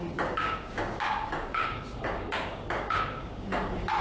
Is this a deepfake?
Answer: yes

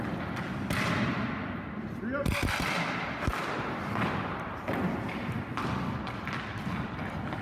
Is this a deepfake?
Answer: no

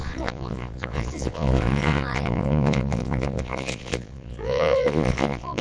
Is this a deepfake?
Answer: yes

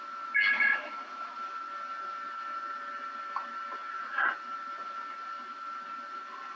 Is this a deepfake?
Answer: no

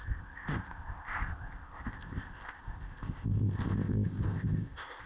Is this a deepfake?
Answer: yes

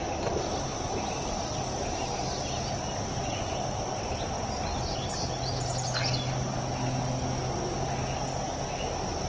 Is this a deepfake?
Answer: no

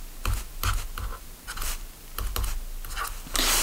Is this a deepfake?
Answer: no